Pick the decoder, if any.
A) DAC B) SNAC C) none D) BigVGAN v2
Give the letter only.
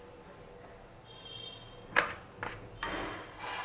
C